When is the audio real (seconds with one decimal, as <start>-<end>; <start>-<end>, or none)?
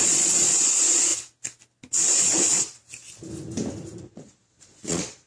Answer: 1.1-2.0; 2.8-4.0